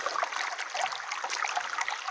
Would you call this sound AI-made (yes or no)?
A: no